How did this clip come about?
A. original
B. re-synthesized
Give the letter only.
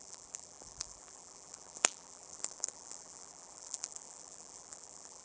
B